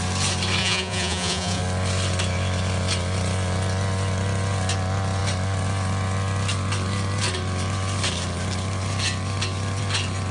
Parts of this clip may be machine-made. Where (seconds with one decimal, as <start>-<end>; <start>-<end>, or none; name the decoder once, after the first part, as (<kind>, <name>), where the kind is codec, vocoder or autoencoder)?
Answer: 0.6-1.6 (vocoder, Vocos)